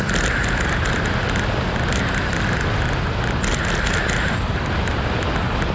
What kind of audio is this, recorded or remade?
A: recorded